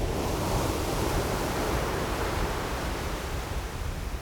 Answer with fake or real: real